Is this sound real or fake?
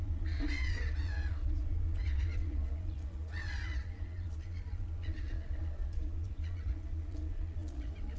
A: fake